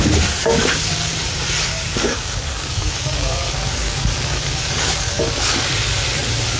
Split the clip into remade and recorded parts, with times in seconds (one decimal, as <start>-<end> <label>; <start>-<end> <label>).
0.0-0.4 recorded; 0.4-1.1 remade; 1.1-1.7 recorded; 1.7-5.7 remade; 5.7-6.6 recorded